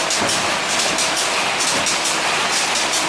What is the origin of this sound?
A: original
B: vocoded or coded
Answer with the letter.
A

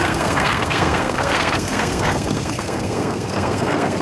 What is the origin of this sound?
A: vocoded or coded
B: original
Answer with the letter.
A